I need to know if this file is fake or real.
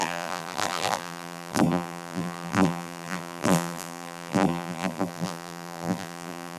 fake